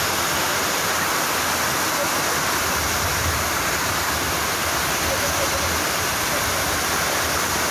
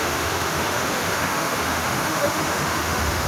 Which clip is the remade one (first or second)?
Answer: second